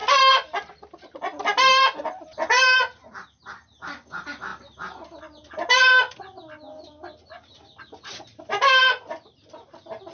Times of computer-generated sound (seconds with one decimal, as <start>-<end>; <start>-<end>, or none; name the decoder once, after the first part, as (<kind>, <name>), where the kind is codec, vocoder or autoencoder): 0.0-0.7 (vocoder, BigVGAN v2); 1.3-2.0

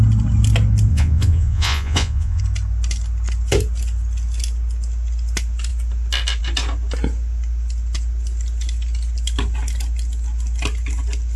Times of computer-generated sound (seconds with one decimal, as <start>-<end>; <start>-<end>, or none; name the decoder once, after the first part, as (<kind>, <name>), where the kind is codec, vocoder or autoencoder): 0.9-2.4 (vocoder, Vocos)